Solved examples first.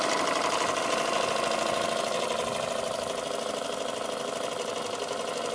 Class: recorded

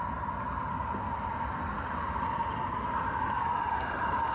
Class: recorded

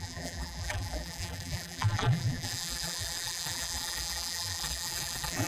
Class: remade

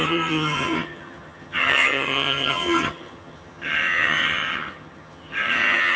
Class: remade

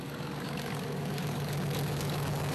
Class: remade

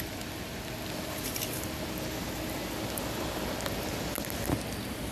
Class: recorded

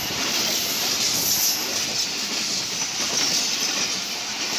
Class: recorded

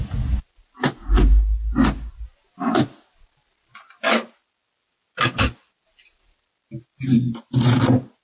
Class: recorded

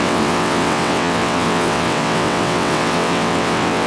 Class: remade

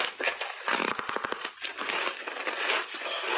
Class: recorded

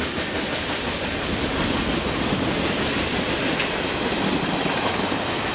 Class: recorded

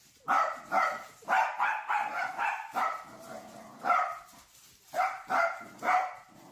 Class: remade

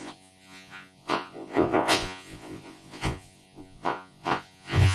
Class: remade